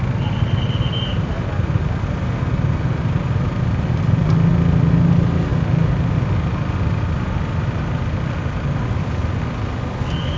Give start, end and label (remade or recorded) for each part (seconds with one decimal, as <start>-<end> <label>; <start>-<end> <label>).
0.0-10.4 recorded